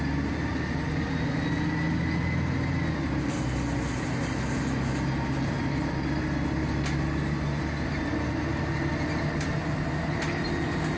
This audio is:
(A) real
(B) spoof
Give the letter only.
A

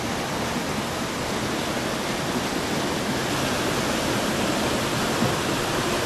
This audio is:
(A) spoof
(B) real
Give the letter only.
B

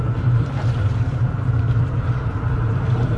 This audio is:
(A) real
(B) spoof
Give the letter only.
B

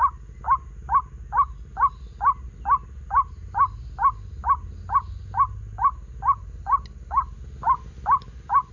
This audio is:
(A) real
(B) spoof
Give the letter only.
A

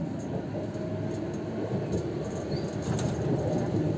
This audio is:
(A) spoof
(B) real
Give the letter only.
B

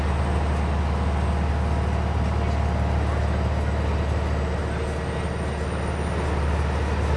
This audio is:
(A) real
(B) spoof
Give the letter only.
A